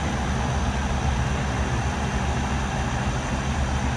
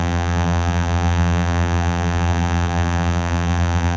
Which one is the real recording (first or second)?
first